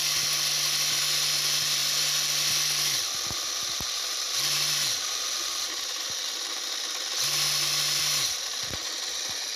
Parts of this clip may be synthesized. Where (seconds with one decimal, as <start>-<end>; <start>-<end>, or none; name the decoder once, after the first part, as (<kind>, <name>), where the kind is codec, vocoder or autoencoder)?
5.5-6.7 (vocoder, BigVGAN v2)